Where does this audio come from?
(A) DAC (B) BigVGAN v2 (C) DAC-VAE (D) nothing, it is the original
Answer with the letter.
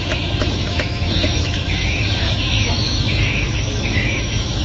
C